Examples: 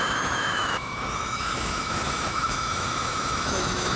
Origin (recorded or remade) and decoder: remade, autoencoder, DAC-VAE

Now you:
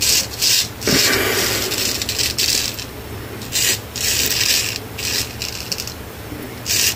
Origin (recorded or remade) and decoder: recorded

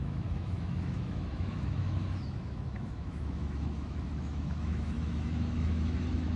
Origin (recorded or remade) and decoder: remade, autoencoder, DAC-VAE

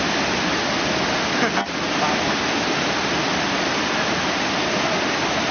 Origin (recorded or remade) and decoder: recorded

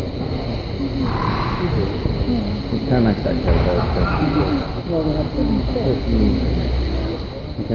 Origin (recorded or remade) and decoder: recorded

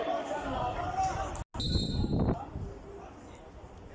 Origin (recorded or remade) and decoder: recorded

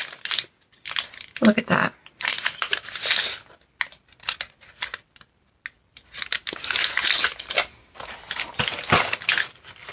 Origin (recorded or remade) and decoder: recorded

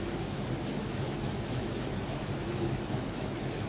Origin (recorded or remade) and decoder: remade, autoencoder, DAC-VAE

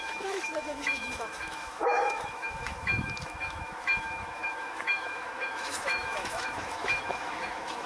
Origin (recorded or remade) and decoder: remade, autoencoder, DAC-VAE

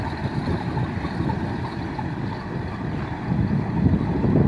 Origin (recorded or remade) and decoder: recorded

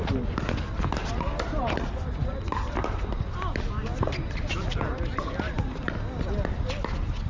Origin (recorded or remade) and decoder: recorded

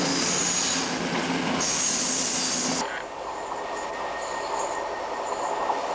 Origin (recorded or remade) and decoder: recorded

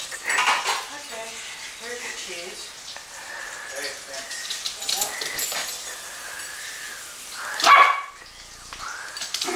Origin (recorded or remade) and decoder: recorded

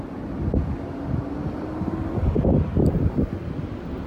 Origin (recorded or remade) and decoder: recorded